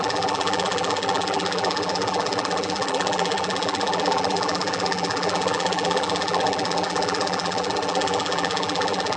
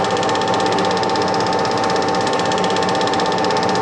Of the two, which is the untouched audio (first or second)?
second